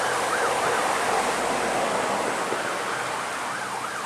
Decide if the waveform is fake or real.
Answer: real